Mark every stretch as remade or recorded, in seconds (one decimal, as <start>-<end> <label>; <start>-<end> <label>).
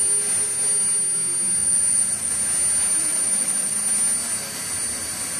0.0-1.6 recorded; 1.6-2.3 remade; 2.3-3.0 recorded; 3.0-3.7 remade; 3.7-5.4 recorded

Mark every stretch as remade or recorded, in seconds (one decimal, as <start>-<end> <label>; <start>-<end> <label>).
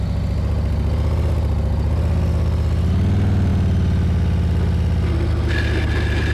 0.0-6.3 recorded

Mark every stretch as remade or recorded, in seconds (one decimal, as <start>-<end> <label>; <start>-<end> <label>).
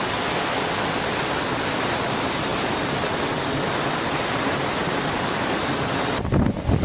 0.0-2.5 recorded; 2.5-3.2 remade; 3.2-4.8 recorded; 4.8-5.6 remade; 5.6-6.8 recorded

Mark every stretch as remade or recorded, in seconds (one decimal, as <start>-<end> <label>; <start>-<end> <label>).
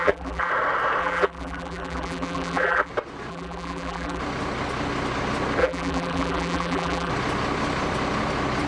0.0-0.5 remade; 0.5-1.0 recorded; 1.0-2.9 remade; 2.9-3.3 recorded; 3.3-4.2 remade; 4.2-5.6 recorded; 5.6-7.1 remade; 7.1-8.7 recorded